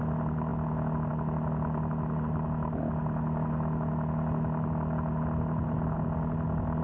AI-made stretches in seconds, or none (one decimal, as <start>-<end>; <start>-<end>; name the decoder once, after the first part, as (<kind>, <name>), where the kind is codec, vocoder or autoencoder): none